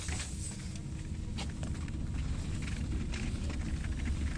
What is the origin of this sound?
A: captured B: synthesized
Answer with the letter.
A